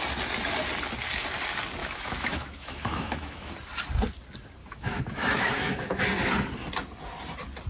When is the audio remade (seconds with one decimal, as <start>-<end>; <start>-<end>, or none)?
1.8-3.5; 4.6-6.0